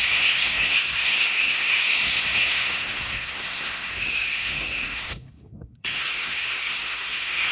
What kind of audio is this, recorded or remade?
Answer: remade